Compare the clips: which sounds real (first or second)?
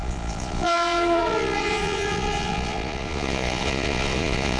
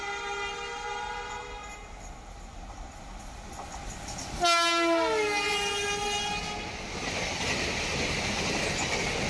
second